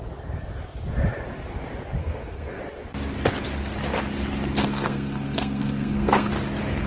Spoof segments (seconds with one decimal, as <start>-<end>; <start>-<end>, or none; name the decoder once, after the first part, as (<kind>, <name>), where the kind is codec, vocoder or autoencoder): 2.0-2.6 (codec, SNAC); 4.6-6.3

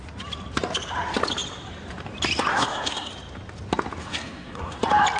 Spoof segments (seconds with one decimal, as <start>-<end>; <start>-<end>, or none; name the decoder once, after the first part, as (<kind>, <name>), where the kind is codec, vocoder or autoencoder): 2.5-3.1 (codec, SNAC); 4.0-4.8

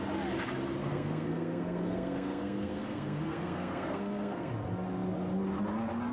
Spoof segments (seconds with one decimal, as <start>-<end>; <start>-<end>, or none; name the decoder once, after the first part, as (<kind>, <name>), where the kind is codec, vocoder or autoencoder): 0.8-4.5 (codec, SNAC)